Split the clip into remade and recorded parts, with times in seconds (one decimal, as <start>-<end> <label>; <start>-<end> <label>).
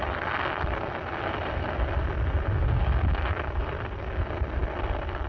0.0-5.3 recorded